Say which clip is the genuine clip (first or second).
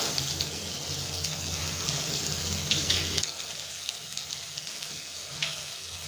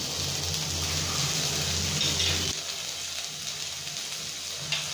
second